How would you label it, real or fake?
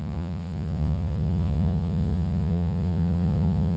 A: fake